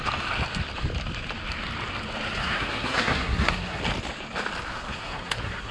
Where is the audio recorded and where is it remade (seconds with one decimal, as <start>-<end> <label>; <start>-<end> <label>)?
0.0-2.4 recorded; 2.4-3.8 remade; 3.8-4.7 recorded; 4.7-5.7 remade